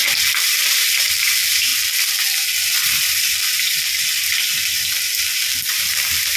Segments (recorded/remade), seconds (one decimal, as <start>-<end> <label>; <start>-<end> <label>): 0.0-1.7 remade; 1.7-5.1 recorded; 5.1-6.4 remade